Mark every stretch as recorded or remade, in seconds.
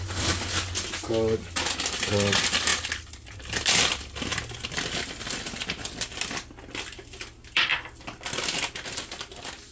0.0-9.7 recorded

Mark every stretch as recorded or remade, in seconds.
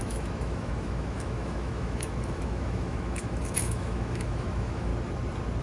0.0-4.9 remade; 4.9-5.6 recorded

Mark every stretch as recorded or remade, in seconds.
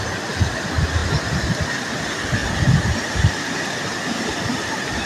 0.0-5.1 recorded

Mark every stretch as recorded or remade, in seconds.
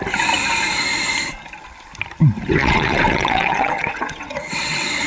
0.0-2.6 recorded; 2.6-5.1 remade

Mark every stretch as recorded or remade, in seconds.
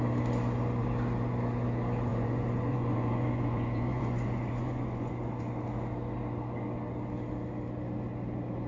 0.0-2.1 recorded; 2.1-5.1 remade; 5.1-8.7 recorded